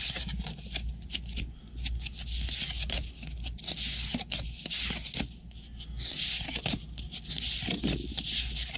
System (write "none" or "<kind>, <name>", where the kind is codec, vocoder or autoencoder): none